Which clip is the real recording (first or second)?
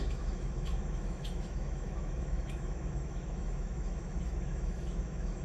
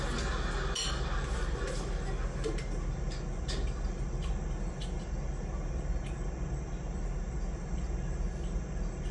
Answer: second